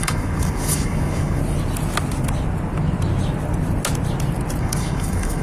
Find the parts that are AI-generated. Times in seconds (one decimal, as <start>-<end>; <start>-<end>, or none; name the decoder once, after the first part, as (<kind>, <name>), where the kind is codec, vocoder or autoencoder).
0.0-1.4 (codec, DAC); 4.6-5.4